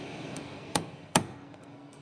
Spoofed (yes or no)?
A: yes